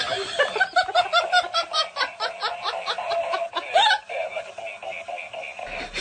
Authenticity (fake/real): real